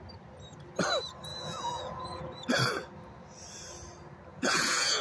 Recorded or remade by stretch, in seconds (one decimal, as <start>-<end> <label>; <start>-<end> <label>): 0.0-1.3 recorded; 1.3-2.2 remade; 2.2-4.3 recorded; 4.3-5.0 remade